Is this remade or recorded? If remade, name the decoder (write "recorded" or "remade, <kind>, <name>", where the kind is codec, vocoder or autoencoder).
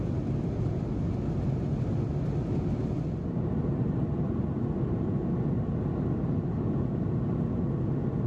recorded